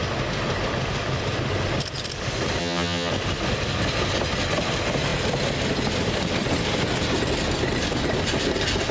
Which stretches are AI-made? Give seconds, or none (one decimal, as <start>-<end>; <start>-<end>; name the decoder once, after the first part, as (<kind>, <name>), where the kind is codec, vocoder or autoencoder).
2.6-3.1 (vocoder, HiFi-GAN)